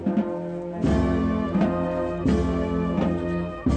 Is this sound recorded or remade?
recorded